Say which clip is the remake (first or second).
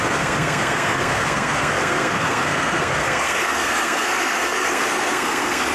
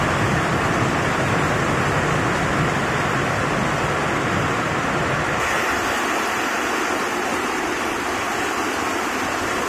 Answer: first